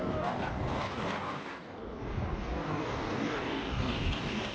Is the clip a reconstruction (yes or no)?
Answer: yes